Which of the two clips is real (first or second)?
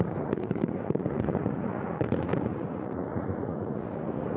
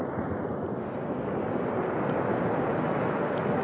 second